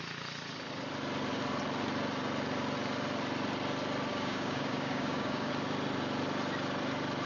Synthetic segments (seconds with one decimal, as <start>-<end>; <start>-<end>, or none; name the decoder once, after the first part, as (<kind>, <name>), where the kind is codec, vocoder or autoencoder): 4.1-5.5 (codec, DAC)